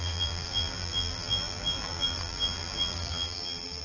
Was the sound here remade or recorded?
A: remade